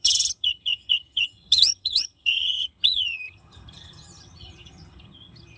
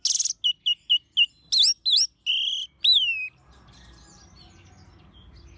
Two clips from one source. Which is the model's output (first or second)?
first